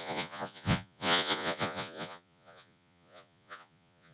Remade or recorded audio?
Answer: remade